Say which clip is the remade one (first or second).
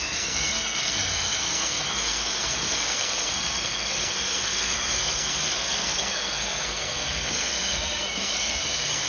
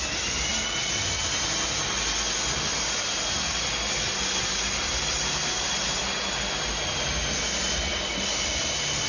first